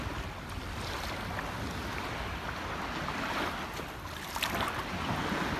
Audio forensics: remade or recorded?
recorded